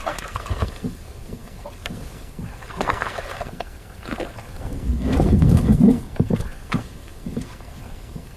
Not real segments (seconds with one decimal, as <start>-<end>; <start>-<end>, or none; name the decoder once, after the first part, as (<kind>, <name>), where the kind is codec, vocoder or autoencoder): 0.0-8.4 (codec, SNAC)